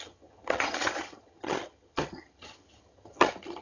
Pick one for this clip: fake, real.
fake